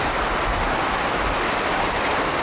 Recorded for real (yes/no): yes